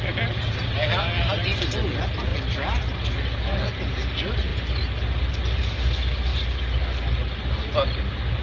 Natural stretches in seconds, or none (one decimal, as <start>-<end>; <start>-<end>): 0.0-8.4